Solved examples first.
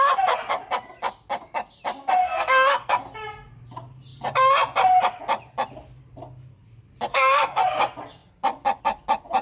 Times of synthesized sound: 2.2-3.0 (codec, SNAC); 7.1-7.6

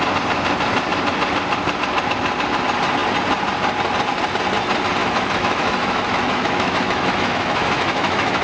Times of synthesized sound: 5.0-8.4 (autoencoder, DAC-VAE)

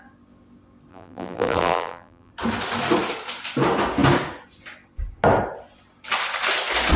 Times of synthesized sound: 0.9-2.3 (vocoder, BigVGAN v2)

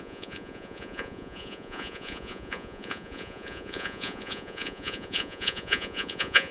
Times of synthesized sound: 0.0-6.5 (vocoder, Vocos)

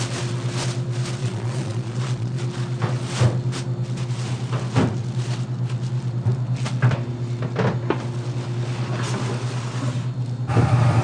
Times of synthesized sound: 1.2-2.4 (vocoder, Vocos)